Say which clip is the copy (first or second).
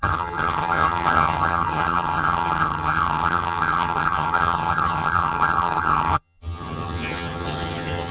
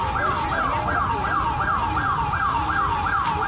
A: first